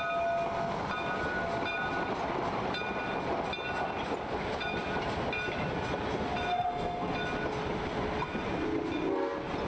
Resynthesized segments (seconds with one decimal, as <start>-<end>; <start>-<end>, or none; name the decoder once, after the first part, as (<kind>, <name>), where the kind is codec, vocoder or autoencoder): 6.5-7.1 (codec, SNAC)